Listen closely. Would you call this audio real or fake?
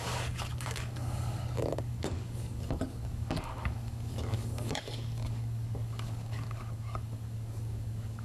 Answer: fake